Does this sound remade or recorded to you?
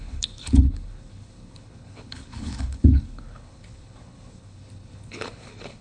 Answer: remade